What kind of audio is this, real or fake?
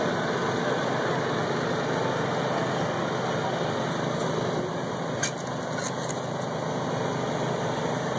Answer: real